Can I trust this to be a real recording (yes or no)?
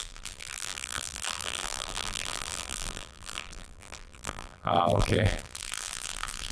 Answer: no